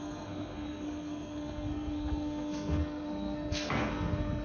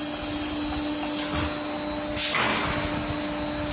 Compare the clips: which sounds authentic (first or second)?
second